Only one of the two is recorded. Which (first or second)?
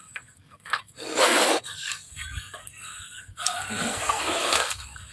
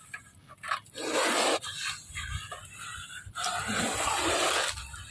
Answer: second